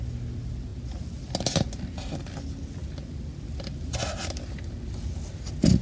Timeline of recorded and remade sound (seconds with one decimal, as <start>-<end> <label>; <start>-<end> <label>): 0.0-5.8 recorded